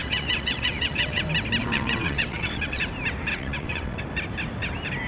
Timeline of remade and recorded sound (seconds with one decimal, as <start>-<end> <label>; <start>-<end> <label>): 0.0-1.2 remade; 1.2-1.6 recorded; 1.6-2.8 remade; 2.8-3.3 recorded; 3.3-4.0 remade; 4.0-5.1 recorded